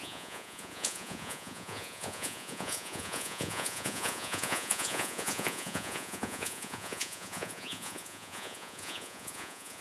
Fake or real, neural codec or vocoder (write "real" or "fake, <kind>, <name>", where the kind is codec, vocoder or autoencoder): fake, vocoder, Vocos